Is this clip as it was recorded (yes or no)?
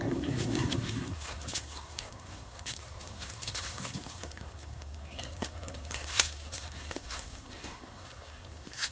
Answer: no